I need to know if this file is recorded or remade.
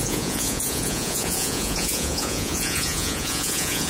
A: remade